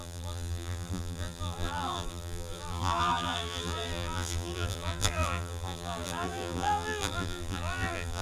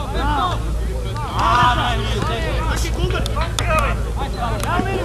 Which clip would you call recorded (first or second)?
second